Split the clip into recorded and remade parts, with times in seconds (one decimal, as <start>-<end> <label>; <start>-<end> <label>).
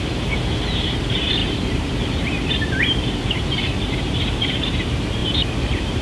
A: 0.0-6.0 remade